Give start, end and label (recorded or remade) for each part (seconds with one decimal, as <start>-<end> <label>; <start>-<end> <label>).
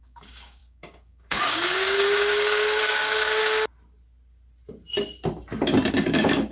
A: 0.0-3.4 remade; 3.4-5.9 recorded; 5.9-6.5 remade